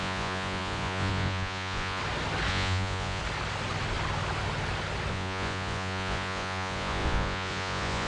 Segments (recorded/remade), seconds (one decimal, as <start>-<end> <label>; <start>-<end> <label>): 0.0-2.0 remade; 2.0-2.5 recorded; 2.5-3.2 remade; 3.2-5.1 recorded; 5.1-8.1 remade